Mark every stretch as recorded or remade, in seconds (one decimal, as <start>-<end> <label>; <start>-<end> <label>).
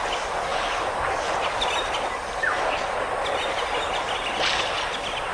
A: 0.0-5.3 recorded